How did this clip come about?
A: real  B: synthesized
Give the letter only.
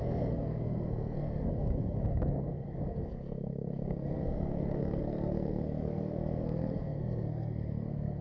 B